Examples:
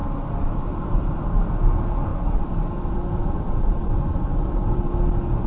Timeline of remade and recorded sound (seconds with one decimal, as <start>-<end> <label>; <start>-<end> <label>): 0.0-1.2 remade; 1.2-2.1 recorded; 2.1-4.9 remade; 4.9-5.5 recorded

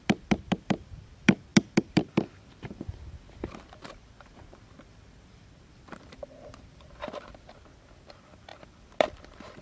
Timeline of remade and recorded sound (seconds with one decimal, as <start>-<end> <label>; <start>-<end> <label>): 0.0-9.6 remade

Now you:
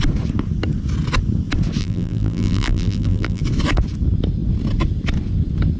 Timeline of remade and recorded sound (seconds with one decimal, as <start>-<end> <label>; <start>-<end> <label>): 0.0-1.8 recorded; 1.8-3.4 remade; 3.4-5.8 recorded

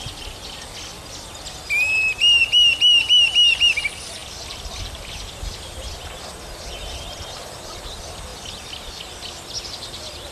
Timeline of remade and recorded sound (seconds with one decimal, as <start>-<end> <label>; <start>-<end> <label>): 0.0-4.2 recorded; 4.2-7.2 remade; 7.2-8.3 recorded; 8.3-9.0 remade; 9.0-10.3 recorded